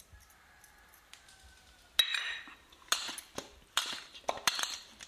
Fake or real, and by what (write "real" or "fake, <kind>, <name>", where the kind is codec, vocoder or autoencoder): real